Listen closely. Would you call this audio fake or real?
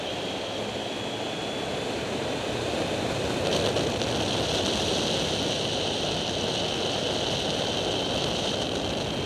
real